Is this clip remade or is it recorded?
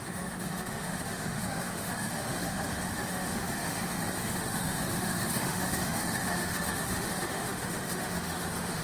remade